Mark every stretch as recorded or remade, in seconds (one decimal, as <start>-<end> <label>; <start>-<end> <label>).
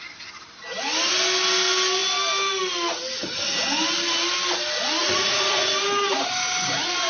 0.0-5.0 recorded; 5.0-5.7 remade; 5.7-7.1 recorded